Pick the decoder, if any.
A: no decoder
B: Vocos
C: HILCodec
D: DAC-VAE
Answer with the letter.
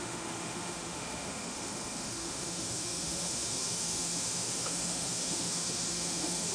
D